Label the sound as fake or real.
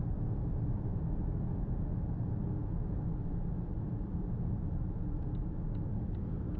real